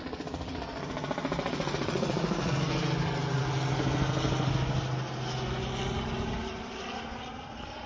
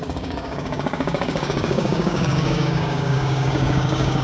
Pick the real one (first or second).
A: first